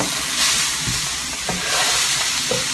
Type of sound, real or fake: real